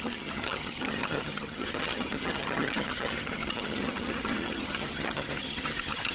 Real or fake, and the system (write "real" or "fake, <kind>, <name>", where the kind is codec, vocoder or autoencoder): fake, vocoder, HiFi-GAN